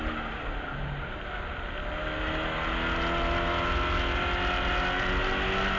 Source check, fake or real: real